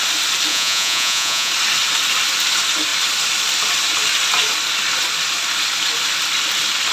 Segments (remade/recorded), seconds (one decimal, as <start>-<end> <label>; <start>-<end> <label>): 0.0-0.5 recorded; 0.5-1.5 remade; 1.5-6.9 recorded

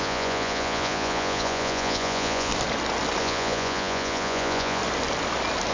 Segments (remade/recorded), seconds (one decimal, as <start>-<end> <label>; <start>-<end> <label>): 0.0-2.5 remade; 2.5-3.2 recorded; 3.2-4.8 remade; 4.8-5.7 recorded

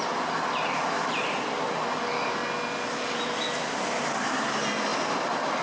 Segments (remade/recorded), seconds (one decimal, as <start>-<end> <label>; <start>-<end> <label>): 0.0-5.6 recorded

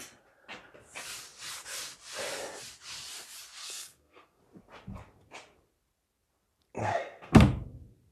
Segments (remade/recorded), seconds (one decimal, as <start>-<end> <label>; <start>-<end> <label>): 0.0-3.6 recorded; 3.6-4.4 remade; 4.4-6.8 recorded; 6.8-7.4 remade; 7.4-8.1 recorded

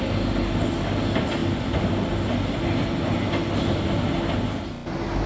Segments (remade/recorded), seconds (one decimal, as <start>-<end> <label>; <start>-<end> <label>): 0.0-5.3 recorded